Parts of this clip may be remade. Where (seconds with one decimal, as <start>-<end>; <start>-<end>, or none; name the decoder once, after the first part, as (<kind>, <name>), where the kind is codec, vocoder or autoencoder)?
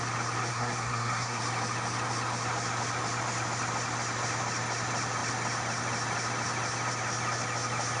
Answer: 0.5-1.4 (codec, SNAC)